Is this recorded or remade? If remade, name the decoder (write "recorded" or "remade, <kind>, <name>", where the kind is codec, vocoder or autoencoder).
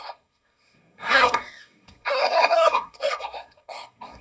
remade, codec, SNAC